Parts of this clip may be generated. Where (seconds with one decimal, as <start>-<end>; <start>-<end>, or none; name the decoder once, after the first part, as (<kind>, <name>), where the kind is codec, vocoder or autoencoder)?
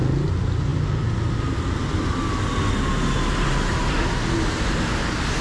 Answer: none